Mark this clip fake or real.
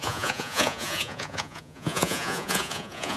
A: fake